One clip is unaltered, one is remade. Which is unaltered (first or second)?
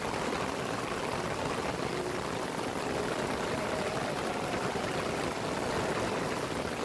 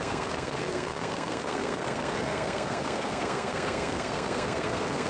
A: first